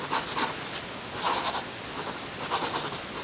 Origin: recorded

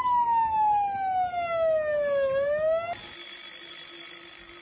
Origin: recorded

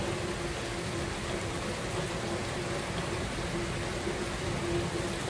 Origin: recorded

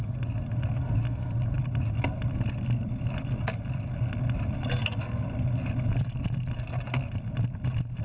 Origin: recorded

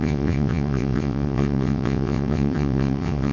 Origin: remade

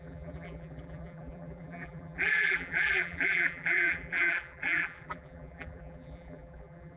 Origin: remade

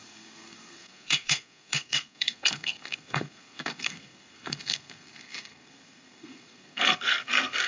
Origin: remade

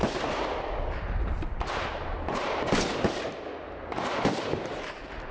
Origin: recorded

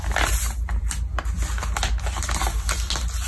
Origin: recorded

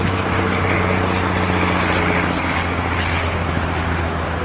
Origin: recorded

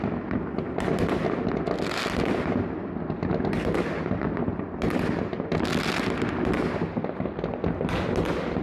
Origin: recorded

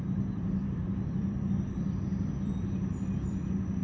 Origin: remade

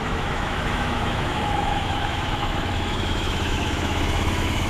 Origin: remade